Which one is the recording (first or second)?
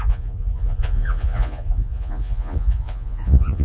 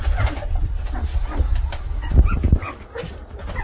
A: second